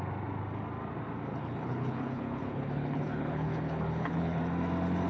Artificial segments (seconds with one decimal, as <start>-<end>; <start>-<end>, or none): 1.3-4.4